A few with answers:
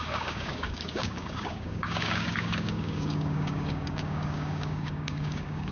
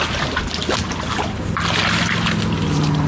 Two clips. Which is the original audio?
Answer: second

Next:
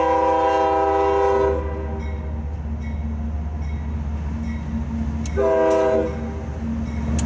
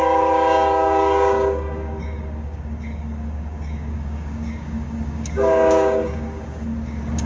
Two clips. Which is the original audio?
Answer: first